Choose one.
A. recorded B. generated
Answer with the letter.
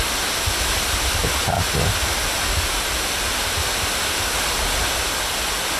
A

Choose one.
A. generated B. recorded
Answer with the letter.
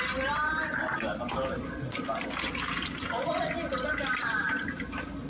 B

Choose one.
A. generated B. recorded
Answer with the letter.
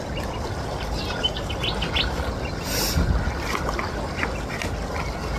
B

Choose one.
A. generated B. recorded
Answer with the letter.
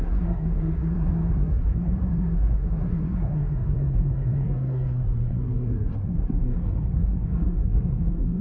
A